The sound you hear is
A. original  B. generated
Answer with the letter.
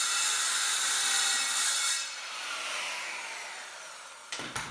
A